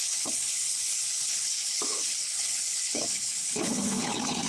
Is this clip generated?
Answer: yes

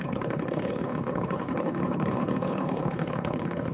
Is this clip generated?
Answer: yes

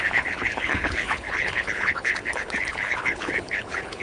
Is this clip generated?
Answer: yes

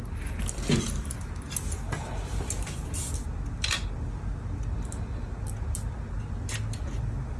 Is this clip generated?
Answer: no